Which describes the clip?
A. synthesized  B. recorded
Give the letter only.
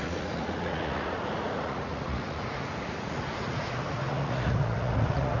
A